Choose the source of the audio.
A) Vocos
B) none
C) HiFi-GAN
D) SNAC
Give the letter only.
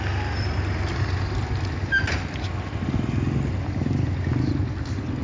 B